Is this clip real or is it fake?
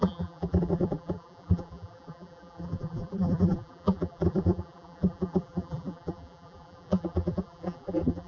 fake